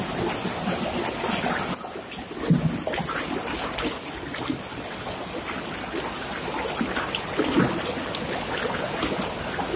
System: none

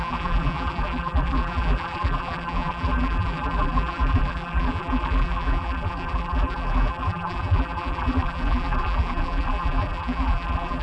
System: vocoder, BigVGAN v2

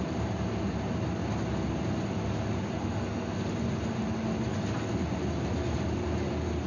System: none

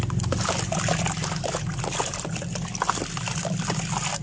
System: none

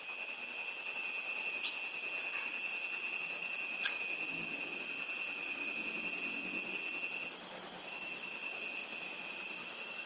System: none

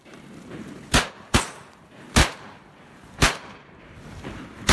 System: vocoder, BigVGAN v2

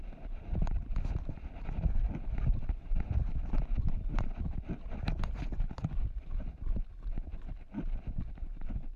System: vocoder, BigVGAN v2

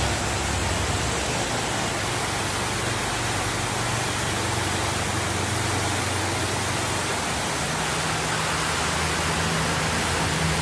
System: none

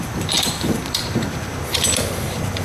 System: vocoder, BigVGAN v2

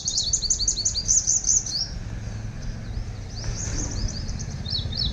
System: none